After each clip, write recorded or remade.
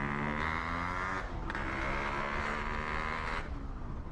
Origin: recorded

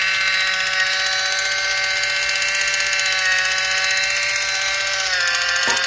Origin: recorded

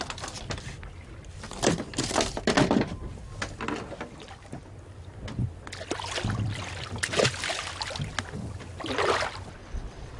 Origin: recorded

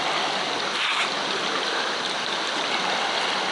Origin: recorded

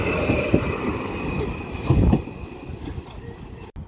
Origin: recorded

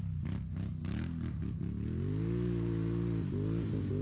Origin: recorded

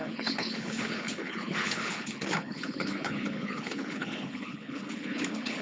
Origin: remade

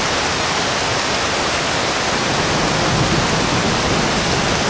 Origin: recorded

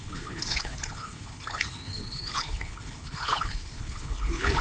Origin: remade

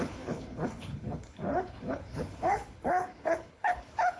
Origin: remade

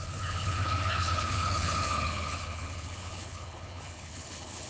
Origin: remade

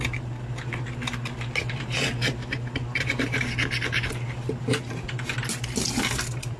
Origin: recorded